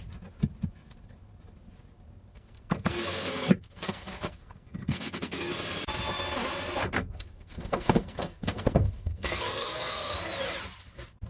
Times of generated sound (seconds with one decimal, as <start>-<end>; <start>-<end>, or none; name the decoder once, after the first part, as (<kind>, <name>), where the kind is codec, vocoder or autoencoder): 2.3-5.5 (codec, SNAC); 6.8-10.2